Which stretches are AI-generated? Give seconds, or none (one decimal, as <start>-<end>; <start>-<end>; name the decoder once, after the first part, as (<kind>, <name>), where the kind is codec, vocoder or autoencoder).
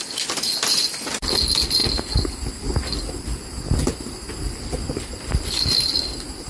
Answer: none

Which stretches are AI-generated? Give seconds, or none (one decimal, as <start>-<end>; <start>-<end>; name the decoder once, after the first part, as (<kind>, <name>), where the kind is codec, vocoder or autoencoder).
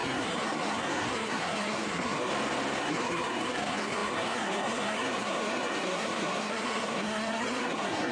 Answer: 0.0-2.3 (codec, SNAC); 2.8-8.1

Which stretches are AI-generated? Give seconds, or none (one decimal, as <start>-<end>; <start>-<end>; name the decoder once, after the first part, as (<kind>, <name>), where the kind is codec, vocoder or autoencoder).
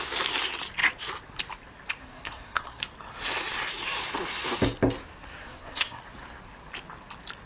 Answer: 2.0-2.8 (codec, SNAC); 5.4-6.0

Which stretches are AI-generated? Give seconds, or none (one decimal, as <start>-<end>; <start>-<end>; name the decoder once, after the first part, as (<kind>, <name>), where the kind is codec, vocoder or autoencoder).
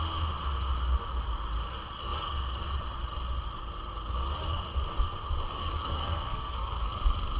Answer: 5.6-6.9 (codec, SNAC)